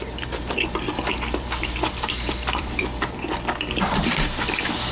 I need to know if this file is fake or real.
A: fake